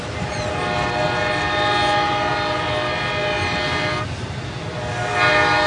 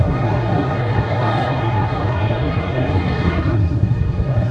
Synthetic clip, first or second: second